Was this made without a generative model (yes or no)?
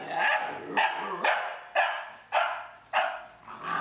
yes